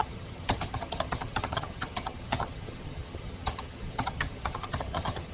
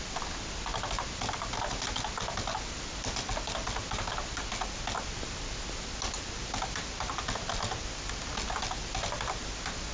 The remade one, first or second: first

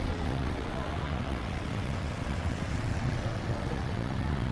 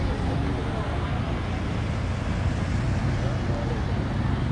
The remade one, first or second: first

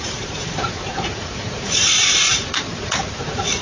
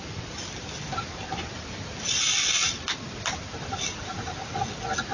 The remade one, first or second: first